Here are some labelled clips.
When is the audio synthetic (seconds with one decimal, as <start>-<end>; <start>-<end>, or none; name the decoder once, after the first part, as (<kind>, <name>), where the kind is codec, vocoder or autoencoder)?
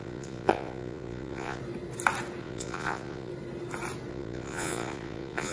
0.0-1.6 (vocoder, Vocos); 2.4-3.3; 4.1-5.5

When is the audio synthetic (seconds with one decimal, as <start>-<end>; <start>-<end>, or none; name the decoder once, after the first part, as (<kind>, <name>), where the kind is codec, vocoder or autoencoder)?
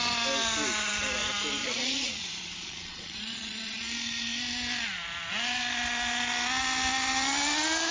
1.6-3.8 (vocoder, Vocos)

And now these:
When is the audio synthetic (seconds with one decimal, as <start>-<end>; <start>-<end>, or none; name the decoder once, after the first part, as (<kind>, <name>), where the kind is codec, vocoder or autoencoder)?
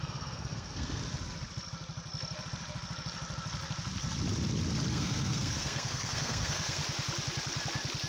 0.0-1.0 (codec, SNAC); 4.9-6.8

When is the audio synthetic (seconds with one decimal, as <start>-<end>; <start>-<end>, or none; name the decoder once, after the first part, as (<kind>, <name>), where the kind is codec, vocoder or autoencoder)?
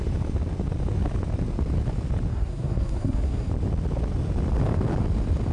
2.3-3.5 (codec, SNAC)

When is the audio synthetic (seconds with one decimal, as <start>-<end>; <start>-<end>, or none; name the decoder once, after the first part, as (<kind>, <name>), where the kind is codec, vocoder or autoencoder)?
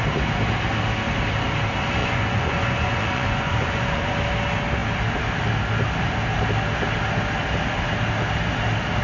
2.0-4.1 (vocoder, Vocos)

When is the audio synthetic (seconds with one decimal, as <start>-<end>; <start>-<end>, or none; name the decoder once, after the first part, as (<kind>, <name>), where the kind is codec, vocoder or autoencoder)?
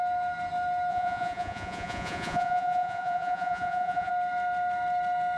0.9-4.1 (vocoder, Vocos)